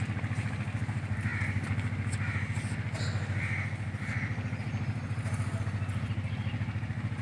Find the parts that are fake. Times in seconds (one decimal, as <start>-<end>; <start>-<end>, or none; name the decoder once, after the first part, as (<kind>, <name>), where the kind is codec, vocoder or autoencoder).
none